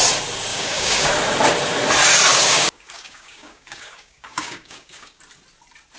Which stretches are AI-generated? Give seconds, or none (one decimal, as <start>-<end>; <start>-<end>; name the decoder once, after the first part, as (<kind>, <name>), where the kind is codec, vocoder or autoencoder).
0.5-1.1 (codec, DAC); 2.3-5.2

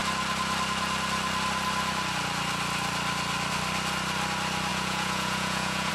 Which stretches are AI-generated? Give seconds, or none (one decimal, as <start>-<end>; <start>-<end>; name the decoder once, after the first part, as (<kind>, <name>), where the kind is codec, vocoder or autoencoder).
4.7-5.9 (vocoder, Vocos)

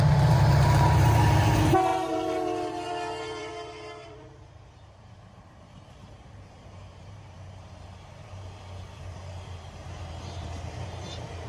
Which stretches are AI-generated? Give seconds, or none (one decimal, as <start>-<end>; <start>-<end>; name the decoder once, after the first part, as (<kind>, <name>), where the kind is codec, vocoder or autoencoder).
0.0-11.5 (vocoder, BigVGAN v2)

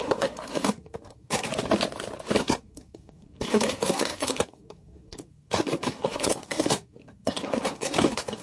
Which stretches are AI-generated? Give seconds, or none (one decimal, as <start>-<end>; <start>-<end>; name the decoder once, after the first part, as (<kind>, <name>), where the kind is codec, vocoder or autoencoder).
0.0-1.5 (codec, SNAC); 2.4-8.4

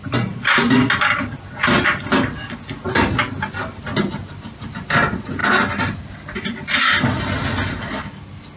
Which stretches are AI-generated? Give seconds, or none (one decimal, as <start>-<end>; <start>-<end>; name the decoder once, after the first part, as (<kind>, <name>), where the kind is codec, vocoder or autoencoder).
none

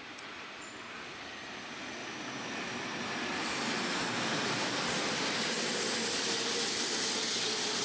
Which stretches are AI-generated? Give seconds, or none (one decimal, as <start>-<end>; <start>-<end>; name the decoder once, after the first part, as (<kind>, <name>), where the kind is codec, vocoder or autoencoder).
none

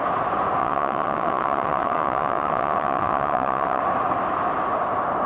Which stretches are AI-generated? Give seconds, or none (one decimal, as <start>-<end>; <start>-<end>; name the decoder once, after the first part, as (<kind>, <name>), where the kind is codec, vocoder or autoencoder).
0.6-3.8 (vocoder, WaveNeXt)